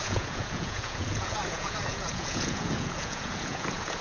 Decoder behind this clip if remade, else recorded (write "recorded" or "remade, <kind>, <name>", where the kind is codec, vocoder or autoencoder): remade, vocoder, Vocos